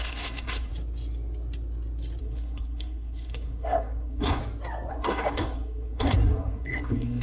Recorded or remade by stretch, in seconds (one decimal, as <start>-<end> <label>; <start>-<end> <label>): 0.0-0.7 remade; 0.7-2.2 recorded; 2.2-4.4 remade; 4.4-4.9 recorded; 4.9-7.2 remade